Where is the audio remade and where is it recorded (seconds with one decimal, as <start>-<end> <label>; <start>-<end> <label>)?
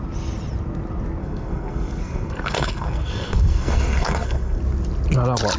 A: 0.0-1.2 recorded; 1.2-4.6 remade; 4.6-5.6 recorded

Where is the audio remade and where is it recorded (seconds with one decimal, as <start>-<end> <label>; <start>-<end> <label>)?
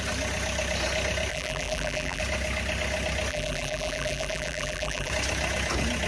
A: 0.0-1.3 recorded; 1.3-2.2 remade; 2.2-3.3 recorded; 3.3-5.1 remade; 5.1-6.1 recorded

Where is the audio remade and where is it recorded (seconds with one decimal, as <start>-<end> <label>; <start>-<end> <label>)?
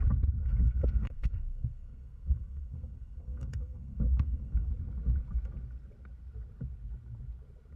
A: 0.0-0.4 recorded; 0.4-4.7 remade; 4.7-7.8 recorded